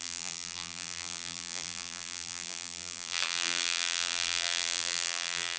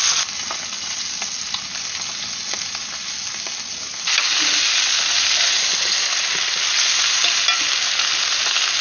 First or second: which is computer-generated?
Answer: first